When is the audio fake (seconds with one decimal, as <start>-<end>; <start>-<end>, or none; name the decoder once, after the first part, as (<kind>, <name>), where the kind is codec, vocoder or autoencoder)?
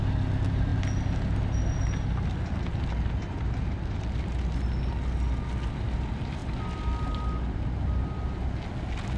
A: none